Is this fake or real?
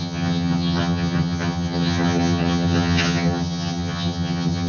fake